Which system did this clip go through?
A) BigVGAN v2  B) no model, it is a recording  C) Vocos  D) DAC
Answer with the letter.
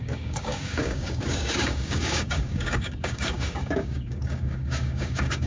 D